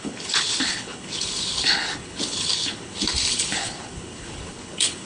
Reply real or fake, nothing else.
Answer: fake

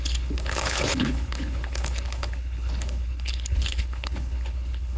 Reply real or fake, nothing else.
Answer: fake